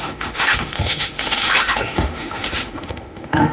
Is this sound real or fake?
fake